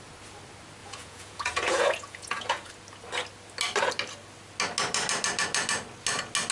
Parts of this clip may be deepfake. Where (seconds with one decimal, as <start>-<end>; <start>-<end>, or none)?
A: 0.8-2.7

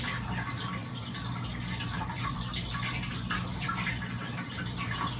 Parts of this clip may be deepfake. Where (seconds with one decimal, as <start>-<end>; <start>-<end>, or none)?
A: none

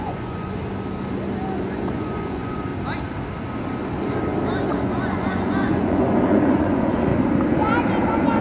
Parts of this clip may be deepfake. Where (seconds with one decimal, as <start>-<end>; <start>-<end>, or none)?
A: 0.0-0.6; 1.6-2.7; 4.7-7.1

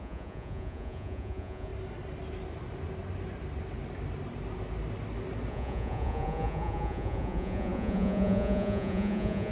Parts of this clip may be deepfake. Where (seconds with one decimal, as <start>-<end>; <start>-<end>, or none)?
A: 0.0-1.7; 5.5-9.5

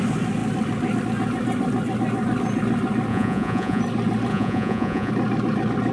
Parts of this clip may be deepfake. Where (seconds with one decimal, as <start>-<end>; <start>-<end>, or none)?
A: 3.1-3.8; 4.3-5.1

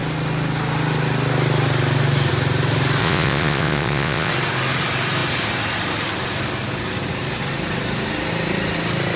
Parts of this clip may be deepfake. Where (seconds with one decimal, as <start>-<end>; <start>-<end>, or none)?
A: 3.0-4.3

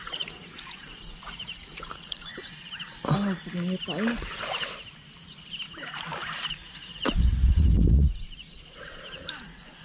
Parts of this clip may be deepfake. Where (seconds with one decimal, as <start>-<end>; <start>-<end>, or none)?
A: 0.0-2.3; 6.5-9.8